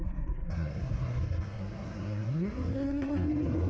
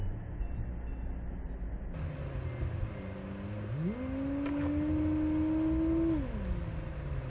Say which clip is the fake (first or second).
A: first